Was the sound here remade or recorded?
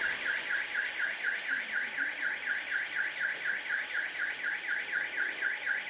recorded